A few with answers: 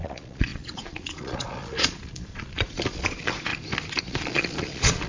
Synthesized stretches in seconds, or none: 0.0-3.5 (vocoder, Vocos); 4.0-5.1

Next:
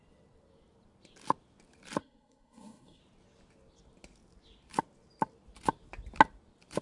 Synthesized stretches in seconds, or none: 2.0-3.0 (codec, SNAC)